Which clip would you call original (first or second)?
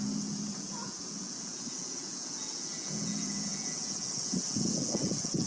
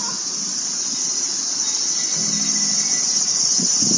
second